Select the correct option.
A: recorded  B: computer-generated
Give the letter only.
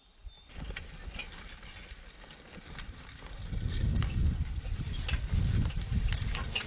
A